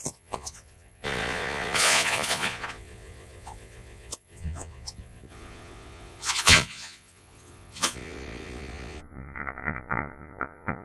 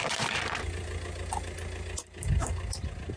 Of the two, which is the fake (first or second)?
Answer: first